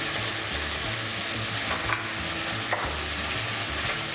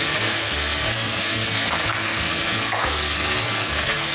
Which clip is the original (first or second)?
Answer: first